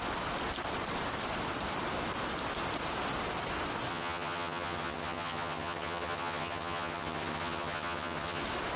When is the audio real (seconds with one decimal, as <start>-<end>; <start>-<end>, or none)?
0.0-3.9; 8.4-8.8